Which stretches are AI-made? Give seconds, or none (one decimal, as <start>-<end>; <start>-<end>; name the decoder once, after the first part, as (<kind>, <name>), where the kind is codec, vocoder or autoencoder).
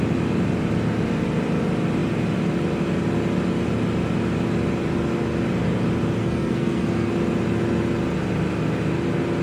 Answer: 6.2-7.1 (codec, SNAC)